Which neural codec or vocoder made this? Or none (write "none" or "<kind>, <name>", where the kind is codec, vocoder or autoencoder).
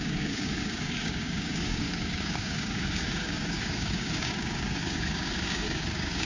codec, DAC